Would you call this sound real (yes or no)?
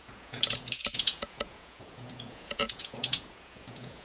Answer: no